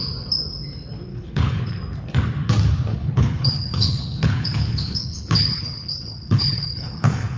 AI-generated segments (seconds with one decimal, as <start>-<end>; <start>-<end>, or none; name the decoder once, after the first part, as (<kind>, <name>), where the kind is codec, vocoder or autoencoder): 1.1-1.8 (codec, HILCodec); 2.9-7.4